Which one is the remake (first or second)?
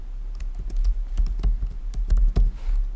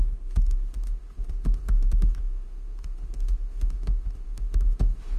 second